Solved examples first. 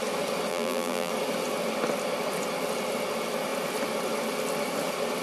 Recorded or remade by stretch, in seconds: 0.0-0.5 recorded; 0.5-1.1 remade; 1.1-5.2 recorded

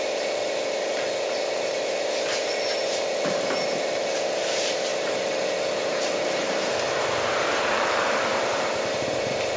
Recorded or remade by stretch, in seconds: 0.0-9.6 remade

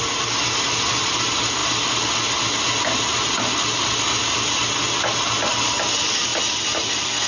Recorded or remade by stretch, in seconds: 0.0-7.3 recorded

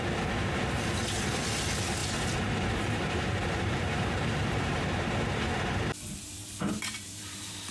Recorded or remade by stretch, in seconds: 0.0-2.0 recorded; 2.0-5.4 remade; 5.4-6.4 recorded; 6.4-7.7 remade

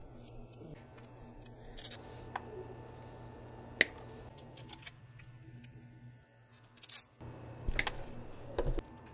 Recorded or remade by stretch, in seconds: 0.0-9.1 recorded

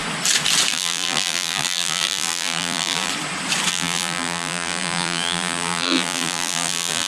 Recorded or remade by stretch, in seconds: 0.0-0.7 recorded; 0.7-3.1 remade; 3.1-3.7 recorded; 3.7-7.1 remade